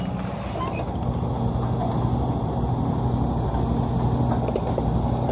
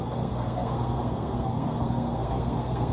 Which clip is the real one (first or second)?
first